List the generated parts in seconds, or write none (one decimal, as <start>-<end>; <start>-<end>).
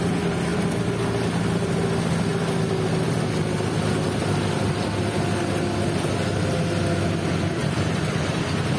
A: 7.6-8.4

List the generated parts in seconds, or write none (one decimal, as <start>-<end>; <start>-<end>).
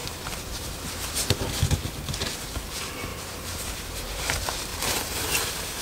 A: 3.1-4.2; 4.7-5.8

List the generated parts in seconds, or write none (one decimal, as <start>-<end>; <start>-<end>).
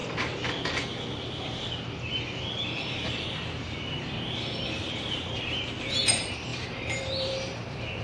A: 4.8-8.0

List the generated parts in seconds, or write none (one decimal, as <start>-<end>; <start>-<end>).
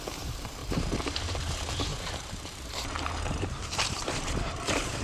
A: 0.6-1.4; 1.9-5.0